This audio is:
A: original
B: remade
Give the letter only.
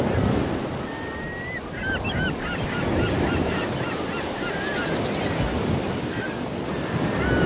A